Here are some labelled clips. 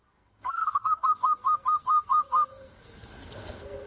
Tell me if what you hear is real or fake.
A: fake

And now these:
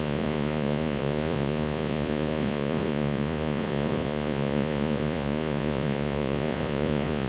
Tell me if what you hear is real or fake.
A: fake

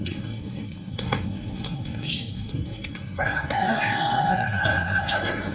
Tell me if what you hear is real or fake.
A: fake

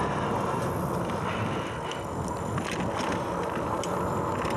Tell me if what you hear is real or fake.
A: real